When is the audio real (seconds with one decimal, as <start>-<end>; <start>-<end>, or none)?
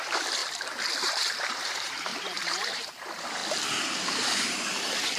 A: 0.4-1.0; 3.4-4.1